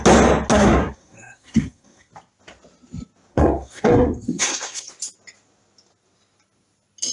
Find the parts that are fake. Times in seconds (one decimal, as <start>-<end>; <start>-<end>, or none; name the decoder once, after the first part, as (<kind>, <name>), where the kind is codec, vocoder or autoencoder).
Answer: 0.5-2.1 (codec, SNAC); 3.3-4.9